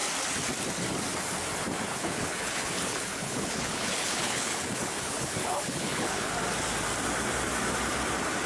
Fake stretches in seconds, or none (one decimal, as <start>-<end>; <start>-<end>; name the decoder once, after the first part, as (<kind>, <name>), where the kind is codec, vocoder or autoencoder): 1.9-6.3 (codec, HILCodec)